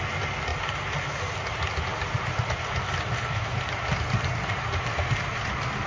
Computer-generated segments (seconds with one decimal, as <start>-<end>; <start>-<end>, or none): none